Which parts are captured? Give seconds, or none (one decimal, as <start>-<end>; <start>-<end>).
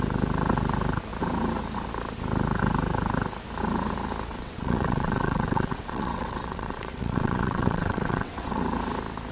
0.0-4.3; 8.6-9.3